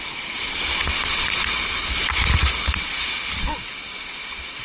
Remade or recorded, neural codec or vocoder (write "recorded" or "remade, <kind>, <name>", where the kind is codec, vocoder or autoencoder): recorded